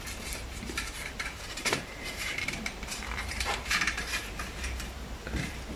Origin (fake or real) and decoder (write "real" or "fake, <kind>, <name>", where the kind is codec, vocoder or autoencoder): fake, vocoder, BigVGAN v2